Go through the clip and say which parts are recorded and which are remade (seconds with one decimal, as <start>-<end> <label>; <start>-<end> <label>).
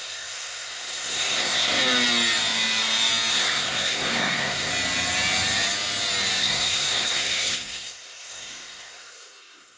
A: 0.0-1.8 remade; 1.8-3.3 recorded; 3.3-4.7 remade; 4.7-6.4 recorded; 6.4-9.8 remade